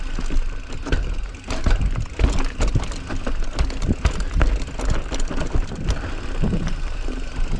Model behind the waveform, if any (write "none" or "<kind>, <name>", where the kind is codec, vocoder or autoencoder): none